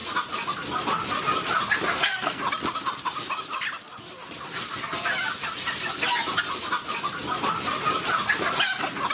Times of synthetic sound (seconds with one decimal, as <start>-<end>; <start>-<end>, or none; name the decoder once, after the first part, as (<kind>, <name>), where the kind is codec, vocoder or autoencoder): 1.9-2.4 (codec, SNAC)